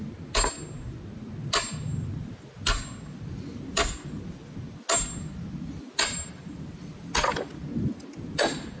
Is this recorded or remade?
recorded